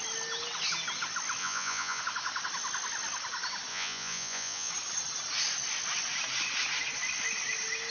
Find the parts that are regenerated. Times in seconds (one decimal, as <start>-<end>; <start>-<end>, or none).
1.4-2.0; 3.7-4.7